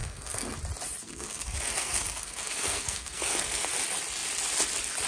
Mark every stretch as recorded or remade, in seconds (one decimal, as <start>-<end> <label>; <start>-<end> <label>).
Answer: 0.0-0.6 remade; 0.6-1.0 recorded; 1.0-3.7 remade; 3.7-5.1 recorded